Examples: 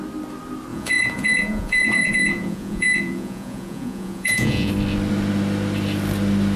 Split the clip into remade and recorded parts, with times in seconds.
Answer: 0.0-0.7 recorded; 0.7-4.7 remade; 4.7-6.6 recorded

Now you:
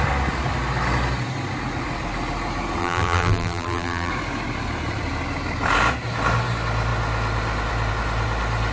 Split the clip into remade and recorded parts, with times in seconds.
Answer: 0.0-2.8 recorded; 2.8-4.1 remade; 4.1-8.7 recorded

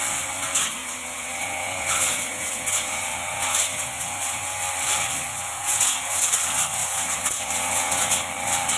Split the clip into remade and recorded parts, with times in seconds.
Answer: 0.0-0.8 recorded; 0.8-4.6 remade; 4.6-5.3 recorded; 5.3-6.3 remade; 6.3-6.8 recorded; 6.8-8.1 remade; 8.1-8.8 recorded

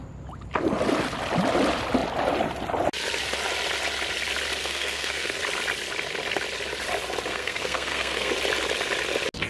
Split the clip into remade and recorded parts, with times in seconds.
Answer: 0.0-4.6 recorded; 4.6-5.4 remade; 5.4-7.3 recorded; 7.3-8.3 remade; 8.3-9.5 recorded

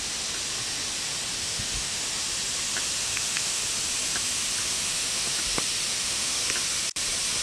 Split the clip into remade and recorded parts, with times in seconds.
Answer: 0.0-1.4 recorded; 1.4-2.0 remade; 2.0-3.0 recorded; 3.0-3.6 remade; 3.6-4.6 recorded; 4.6-5.4 remade; 5.4-5.9 recorded; 5.9-6.4 remade; 6.4-7.4 recorded

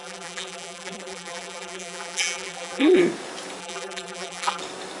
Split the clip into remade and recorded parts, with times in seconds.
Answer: 0.0-3.0 remade; 3.0-3.6 recorded; 3.6-4.6 remade; 4.6-5.0 recorded

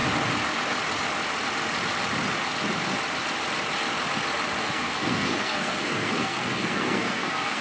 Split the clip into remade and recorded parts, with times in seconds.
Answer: 0.0-4.6 recorded; 4.6-7.6 remade

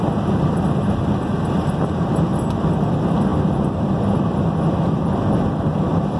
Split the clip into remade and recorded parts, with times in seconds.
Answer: 0.0-6.2 recorded